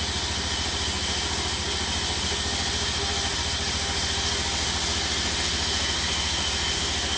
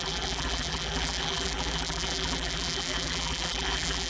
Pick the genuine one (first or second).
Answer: first